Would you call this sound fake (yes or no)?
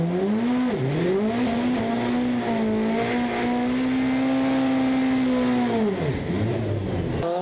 no